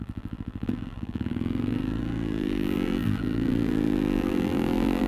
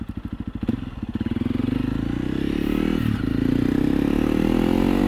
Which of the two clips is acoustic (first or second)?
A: second